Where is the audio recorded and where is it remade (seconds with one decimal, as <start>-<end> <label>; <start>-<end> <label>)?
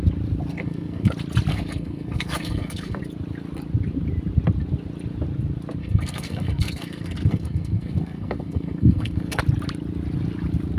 0.0-0.5 recorded; 0.5-1.1 remade; 1.1-1.5 recorded; 1.5-3.0 remade; 3.0-5.8 recorded; 5.8-9.4 remade; 9.4-10.8 recorded